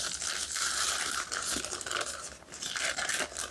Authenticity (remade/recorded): recorded